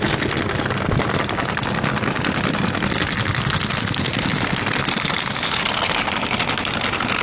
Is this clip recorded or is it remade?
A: recorded